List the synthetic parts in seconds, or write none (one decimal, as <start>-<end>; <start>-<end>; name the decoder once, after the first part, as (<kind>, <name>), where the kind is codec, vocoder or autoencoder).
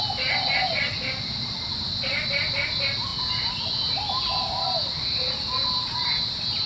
none